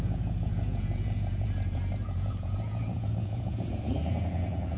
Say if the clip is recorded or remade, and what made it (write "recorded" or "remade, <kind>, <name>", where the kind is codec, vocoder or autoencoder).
remade, vocoder, Vocos